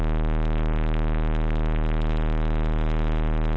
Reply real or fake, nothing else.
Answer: real